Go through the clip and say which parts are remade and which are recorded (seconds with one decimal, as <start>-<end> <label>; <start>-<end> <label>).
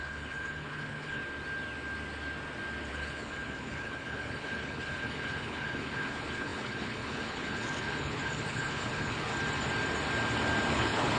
0.0-1.2 remade; 1.2-2.9 recorded; 2.9-9.3 remade; 9.3-10.7 recorded; 10.7-11.2 remade